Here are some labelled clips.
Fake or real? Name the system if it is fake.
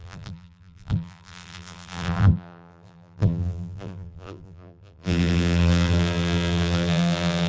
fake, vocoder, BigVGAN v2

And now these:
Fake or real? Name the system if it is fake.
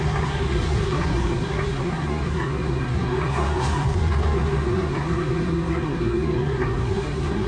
fake, codec, SNAC